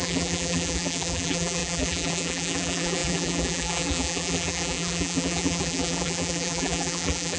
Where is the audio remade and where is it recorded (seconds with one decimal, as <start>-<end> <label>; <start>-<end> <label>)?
0.0-7.4 remade